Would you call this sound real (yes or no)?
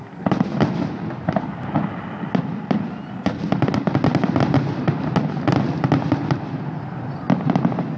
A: yes